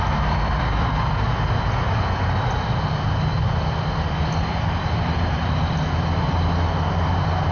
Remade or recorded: recorded